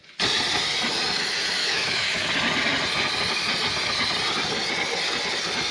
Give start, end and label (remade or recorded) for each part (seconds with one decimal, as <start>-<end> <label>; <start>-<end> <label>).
0.0-1.6 recorded; 1.6-2.3 remade; 2.3-5.7 recorded